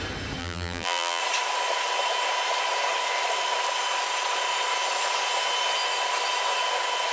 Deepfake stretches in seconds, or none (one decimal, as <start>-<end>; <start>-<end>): 0.4-1.2

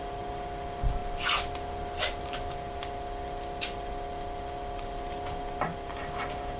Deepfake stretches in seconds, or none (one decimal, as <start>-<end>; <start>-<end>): none

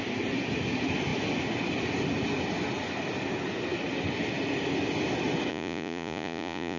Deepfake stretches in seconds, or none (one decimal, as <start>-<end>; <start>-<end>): 5.5-6.8

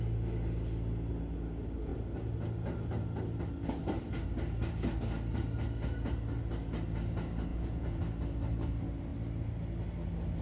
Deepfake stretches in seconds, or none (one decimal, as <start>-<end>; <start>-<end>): 7.5-8.0

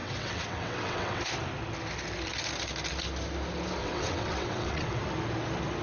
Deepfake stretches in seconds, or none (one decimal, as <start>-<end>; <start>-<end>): 0.0-1.2; 3.8-5.0

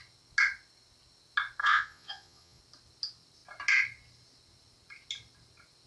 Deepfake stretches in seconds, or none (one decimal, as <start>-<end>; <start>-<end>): 1.6-2.6

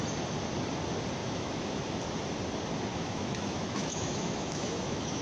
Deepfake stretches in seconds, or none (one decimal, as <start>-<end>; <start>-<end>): 1.2-1.8; 2.9-5.2

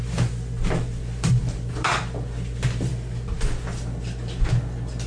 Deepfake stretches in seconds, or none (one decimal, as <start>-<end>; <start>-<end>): none